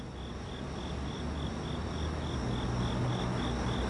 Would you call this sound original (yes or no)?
yes